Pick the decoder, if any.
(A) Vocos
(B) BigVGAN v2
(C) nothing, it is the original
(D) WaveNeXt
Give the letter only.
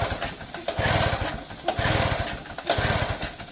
C